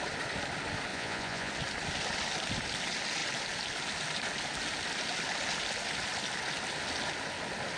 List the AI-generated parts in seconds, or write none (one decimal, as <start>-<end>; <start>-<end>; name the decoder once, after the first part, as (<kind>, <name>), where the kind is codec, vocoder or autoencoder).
0.9-1.5 (vocoder, Vocos)